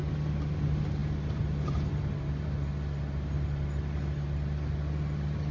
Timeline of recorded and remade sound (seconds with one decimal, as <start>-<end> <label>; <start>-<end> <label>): 0.0-5.5 recorded